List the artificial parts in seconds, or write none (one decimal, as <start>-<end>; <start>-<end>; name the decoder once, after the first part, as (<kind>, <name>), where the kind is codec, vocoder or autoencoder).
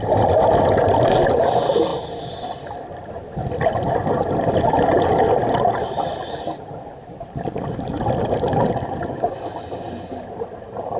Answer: none